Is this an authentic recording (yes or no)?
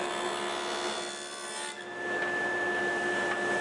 yes